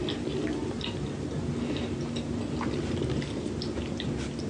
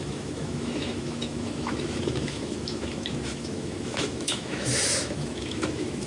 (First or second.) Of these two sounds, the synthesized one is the second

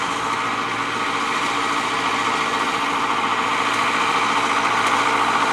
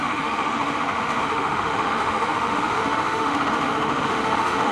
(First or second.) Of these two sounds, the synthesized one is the second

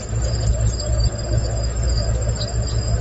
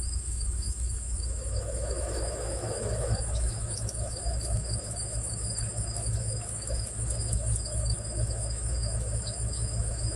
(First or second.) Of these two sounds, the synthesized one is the second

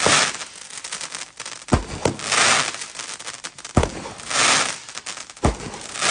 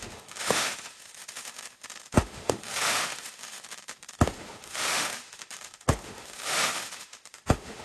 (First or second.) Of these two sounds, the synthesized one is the second